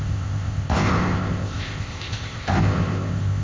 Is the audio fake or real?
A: fake